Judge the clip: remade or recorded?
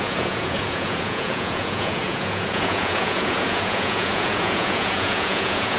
remade